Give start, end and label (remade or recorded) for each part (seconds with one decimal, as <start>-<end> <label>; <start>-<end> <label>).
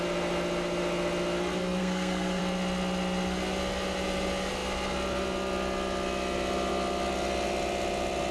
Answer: 0.0-1.8 recorded; 1.8-2.4 remade; 2.4-8.3 recorded